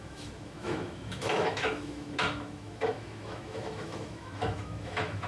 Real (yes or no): no